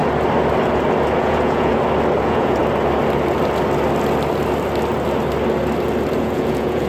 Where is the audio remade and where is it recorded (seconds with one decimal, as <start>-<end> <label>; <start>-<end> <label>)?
0.0-1.2 recorded; 1.2-1.7 remade; 1.7-2.2 recorded; 2.2-2.6 remade; 2.6-6.2 recorded; 6.2-6.9 remade